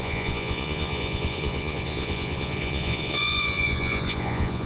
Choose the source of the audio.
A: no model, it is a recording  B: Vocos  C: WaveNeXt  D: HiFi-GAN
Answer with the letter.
B